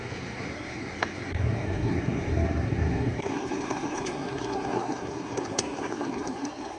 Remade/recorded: remade